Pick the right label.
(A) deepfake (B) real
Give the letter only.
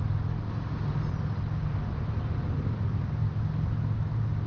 B